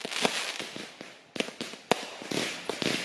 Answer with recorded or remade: recorded